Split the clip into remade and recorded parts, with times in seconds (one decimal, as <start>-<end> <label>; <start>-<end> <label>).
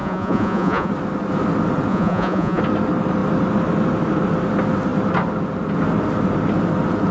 0.0-0.9 remade; 0.9-1.9 recorded; 1.9-2.6 remade; 2.6-7.1 recorded